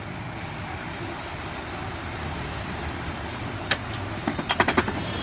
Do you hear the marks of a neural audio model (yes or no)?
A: yes